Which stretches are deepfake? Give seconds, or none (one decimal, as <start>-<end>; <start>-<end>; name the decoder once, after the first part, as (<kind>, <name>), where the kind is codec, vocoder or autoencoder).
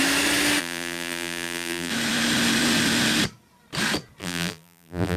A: 0.6-1.9 (vocoder, BigVGAN v2); 4.2-5.2